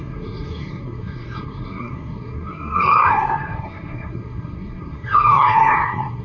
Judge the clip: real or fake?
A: fake